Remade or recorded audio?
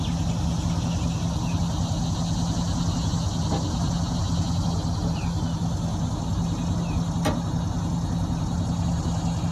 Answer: recorded